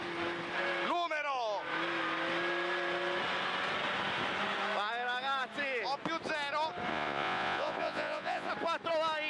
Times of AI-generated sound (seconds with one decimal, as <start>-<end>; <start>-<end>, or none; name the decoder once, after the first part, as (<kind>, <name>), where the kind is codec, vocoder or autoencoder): 6.9-8.5 (vocoder, Vocos)